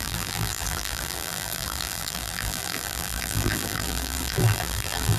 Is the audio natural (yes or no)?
no